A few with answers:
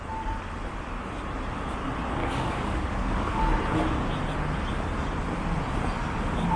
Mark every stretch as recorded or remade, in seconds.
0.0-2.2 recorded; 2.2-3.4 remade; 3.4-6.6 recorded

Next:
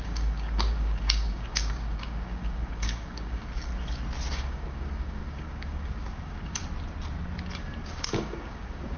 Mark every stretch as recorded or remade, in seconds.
0.0-3.7 remade; 3.7-4.3 recorded; 4.3-6.6 remade; 6.6-7.8 recorded; 7.8-9.0 remade

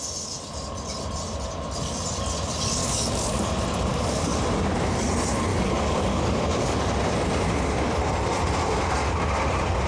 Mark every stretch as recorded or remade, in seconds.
0.0-2.8 recorded; 2.8-3.4 remade; 3.4-3.9 recorded; 3.9-4.4 remade; 4.4-5.5 recorded; 5.5-6.9 remade; 6.9-9.9 recorded

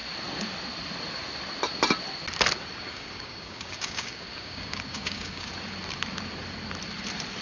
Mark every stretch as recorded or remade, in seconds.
0.0-2.7 recorded; 2.7-5.5 remade; 5.5-7.4 recorded